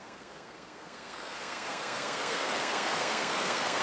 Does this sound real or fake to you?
fake